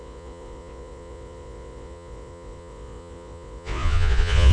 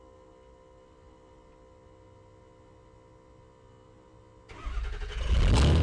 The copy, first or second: first